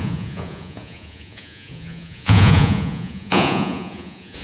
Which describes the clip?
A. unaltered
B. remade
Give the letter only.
B